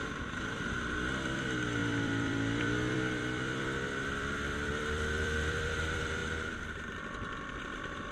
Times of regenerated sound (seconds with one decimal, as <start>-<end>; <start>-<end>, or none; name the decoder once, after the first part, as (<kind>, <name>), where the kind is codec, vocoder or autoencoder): 0.0-8.1 (vocoder, BigVGAN v2)